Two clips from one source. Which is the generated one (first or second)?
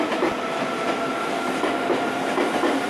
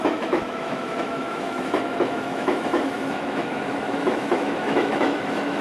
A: second